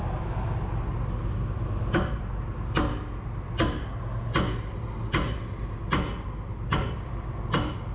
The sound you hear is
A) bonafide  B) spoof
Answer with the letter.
A